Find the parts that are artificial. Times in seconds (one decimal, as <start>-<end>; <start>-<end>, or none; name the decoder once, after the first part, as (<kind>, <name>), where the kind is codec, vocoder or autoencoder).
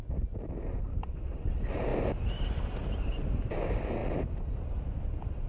none